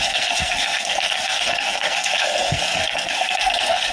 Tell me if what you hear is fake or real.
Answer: fake